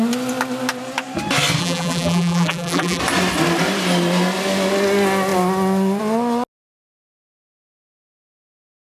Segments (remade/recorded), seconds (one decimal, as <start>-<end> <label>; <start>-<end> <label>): 0.0-1.6 recorded; 1.6-3.0 remade; 3.0-9.0 recorded